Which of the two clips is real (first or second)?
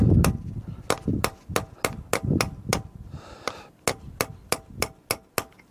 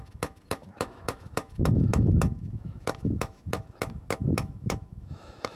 first